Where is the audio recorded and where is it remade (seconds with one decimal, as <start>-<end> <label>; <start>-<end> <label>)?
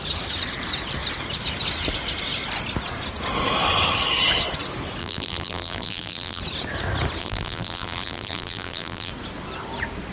0.0-5.0 recorded; 5.0-6.4 remade; 6.4-7.2 recorded; 7.2-9.1 remade; 9.1-10.1 recorded